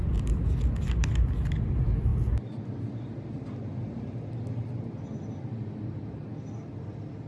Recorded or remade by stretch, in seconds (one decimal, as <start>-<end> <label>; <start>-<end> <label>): 0.0-7.3 recorded